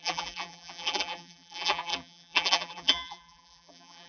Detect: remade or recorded remade